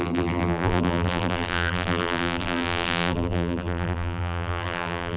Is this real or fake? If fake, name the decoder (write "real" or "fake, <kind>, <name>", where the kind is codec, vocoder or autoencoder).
fake, vocoder, BigVGAN v2